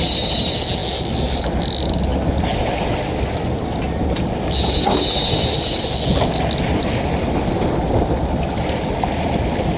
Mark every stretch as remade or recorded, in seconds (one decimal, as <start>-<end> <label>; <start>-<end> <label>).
0.0-2.1 recorded; 2.1-2.7 remade; 2.7-6.8 recorded; 6.8-8.0 remade; 8.0-9.8 recorded